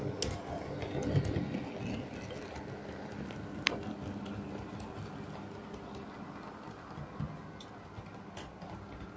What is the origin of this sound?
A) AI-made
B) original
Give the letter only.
B